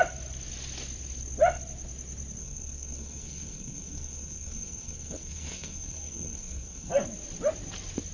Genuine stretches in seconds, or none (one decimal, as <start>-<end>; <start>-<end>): 0.0-2.4; 6.9-8.1

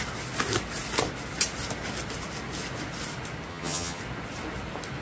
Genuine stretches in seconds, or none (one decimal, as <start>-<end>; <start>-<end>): 0.0-3.5; 4.0-5.0

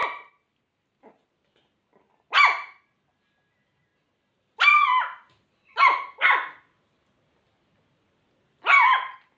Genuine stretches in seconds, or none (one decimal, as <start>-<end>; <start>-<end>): 0.0-9.4

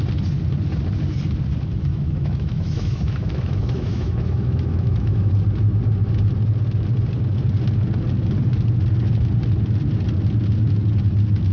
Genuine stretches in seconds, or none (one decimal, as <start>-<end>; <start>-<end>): 0.0-1.9; 5.3-11.5

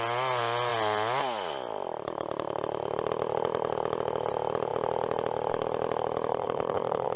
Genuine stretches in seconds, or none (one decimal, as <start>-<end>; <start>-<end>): 0.0-6.3